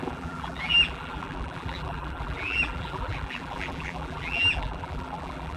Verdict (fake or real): fake